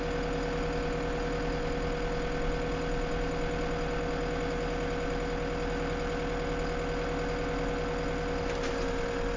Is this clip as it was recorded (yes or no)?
yes